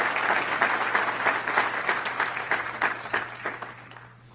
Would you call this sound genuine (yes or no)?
yes